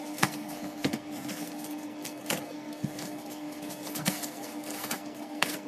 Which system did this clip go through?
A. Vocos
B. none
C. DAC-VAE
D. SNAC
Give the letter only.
D